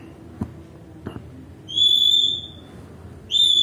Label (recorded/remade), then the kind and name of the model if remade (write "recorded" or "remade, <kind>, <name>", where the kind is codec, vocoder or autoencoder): recorded